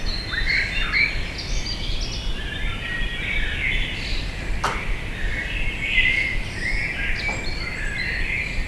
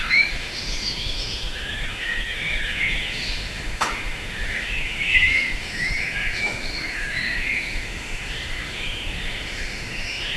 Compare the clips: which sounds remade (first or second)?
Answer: second